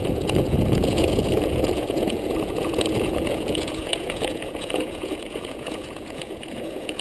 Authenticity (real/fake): fake